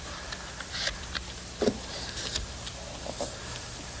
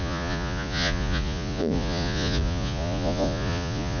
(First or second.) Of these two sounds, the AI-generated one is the second